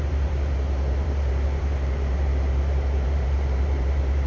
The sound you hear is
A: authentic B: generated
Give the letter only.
B